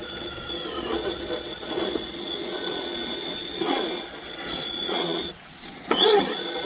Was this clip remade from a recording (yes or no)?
yes